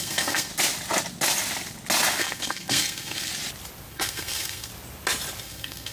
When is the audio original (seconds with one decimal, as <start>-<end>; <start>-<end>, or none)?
0.5-2.2; 3.3-3.9; 4.7-5.4